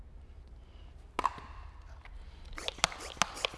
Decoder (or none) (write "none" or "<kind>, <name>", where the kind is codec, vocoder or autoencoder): none